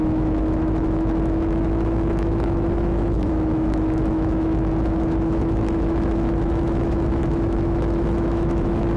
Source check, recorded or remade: remade